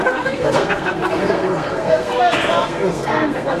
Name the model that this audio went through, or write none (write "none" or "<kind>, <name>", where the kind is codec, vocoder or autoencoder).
codec, SNAC